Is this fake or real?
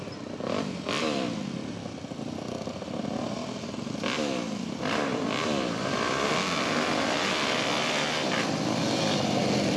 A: real